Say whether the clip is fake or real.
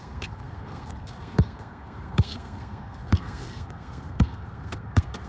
fake